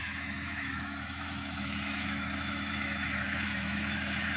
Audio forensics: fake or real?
fake